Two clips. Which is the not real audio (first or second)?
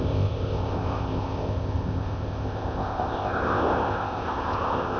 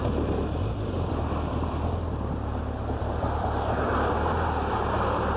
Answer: first